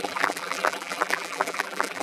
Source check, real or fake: fake